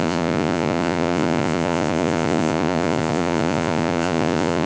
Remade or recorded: remade